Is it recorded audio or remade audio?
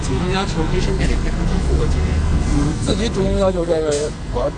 remade